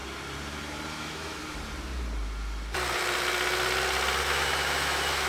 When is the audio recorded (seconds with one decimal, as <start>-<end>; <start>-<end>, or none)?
0.0-0.9; 1.4-4.2